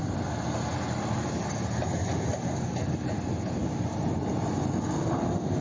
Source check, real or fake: real